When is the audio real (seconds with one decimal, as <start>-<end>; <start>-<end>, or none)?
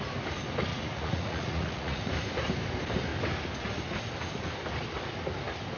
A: 0.0-0.7; 2.1-5.8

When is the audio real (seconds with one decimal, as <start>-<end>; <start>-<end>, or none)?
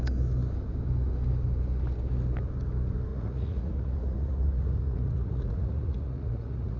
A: 0.0-3.1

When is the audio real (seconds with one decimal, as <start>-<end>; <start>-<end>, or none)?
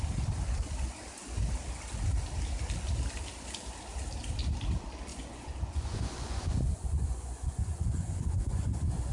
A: 0.0-5.1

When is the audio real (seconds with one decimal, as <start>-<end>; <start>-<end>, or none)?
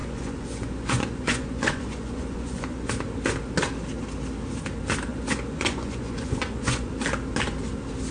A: 2.9-5.1; 6.9-8.1